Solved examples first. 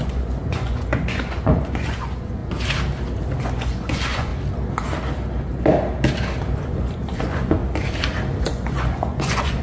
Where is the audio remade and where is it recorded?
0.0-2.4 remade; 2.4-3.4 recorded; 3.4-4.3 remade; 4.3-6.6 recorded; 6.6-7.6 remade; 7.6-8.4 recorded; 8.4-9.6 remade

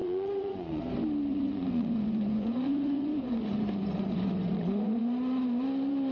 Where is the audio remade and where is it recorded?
0.0-0.8 remade; 0.8-1.3 recorded; 1.3-5.0 remade; 5.0-6.1 recorded

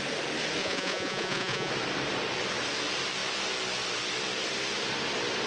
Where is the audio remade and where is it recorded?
0.0-0.6 recorded; 0.6-1.7 remade; 1.7-5.5 recorded

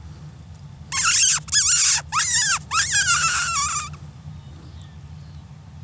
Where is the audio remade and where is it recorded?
0.0-5.8 recorded